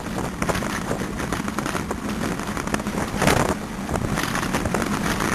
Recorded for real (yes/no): yes